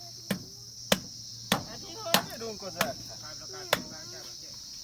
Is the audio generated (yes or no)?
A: no